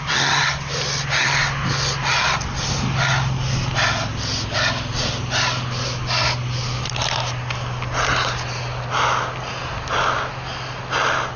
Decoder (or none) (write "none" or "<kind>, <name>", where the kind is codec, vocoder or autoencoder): none